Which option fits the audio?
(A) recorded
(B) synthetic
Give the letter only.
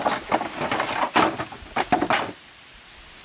A